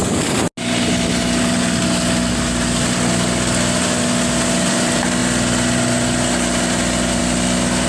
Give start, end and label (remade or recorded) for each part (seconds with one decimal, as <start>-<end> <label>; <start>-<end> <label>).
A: 0.0-7.9 recorded